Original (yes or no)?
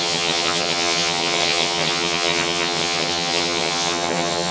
no